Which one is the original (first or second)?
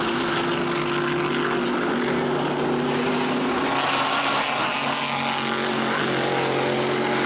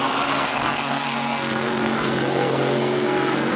first